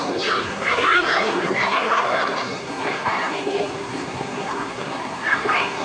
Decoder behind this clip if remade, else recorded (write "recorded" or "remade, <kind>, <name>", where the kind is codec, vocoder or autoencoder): remade, codec, SNAC